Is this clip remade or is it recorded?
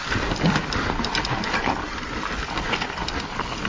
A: recorded